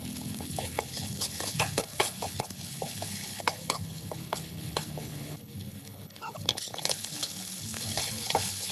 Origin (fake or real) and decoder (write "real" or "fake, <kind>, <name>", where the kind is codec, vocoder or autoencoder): fake, codec, HILCodec